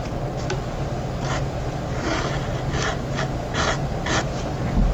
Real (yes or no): yes